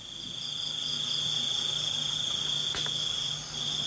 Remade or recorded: recorded